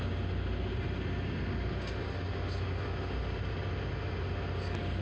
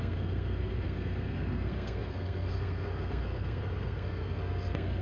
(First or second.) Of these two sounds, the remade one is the second